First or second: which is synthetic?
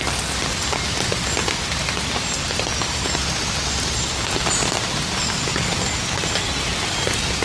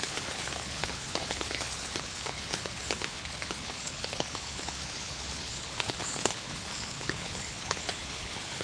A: second